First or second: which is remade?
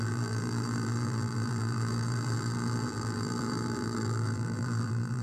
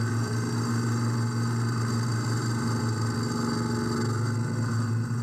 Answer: first